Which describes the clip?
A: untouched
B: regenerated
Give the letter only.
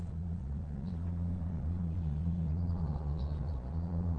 B